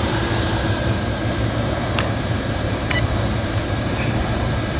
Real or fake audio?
fake